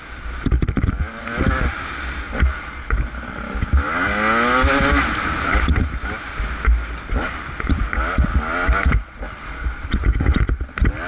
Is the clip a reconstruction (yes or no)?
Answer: no